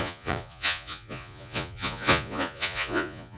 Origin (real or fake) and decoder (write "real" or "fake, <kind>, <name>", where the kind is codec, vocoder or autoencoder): fake, vocoder, Vocos